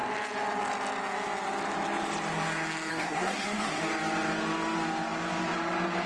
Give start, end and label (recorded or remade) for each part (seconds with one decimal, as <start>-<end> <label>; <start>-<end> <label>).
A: 0.0-2.9 recorded; 2.9-3.8 remade; 3.8-6.1 recorded